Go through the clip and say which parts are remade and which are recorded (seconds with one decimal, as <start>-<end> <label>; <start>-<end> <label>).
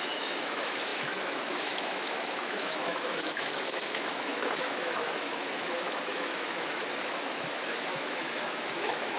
0.0-9.2 remade